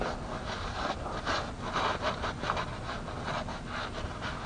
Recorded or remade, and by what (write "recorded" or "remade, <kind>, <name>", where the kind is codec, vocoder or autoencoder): recorded